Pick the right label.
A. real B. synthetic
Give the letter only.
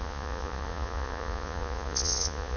B